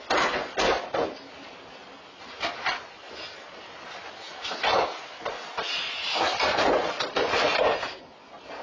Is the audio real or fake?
real